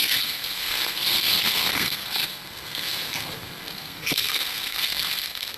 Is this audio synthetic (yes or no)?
yes